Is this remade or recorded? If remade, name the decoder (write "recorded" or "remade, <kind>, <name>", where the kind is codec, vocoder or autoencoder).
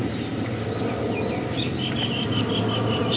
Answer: recorded